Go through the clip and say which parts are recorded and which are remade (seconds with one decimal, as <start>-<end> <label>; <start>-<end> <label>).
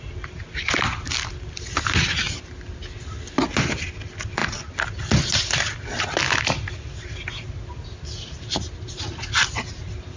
0.0-10.2 recorded